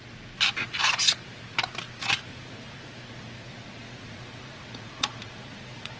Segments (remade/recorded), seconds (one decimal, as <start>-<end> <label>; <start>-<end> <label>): 0.0-2.3 recorded; 2.3-6.0 remade